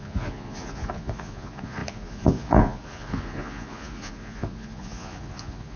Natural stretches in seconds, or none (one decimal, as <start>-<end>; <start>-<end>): none